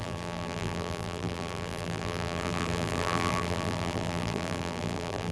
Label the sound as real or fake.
fake